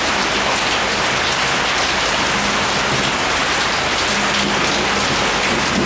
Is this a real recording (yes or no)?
yes